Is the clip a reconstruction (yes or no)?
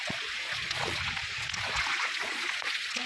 yes